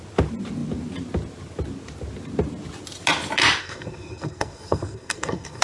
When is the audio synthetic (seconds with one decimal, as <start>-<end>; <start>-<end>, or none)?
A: 3.6-5.6